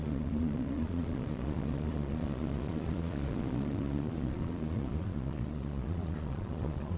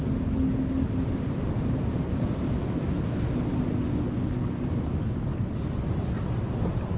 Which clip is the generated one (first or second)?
first